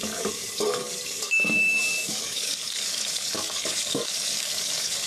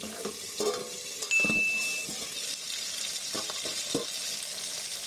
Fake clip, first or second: first